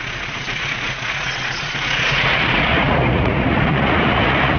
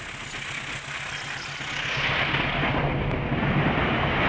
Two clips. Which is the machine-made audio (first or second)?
first